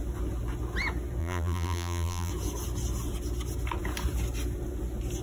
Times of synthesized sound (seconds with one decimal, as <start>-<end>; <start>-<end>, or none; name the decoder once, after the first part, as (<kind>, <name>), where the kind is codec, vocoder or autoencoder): 1.2-2.3 (vocoder, BigVGAN v2)